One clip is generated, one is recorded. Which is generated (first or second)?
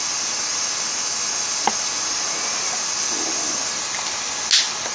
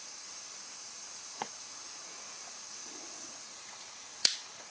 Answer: second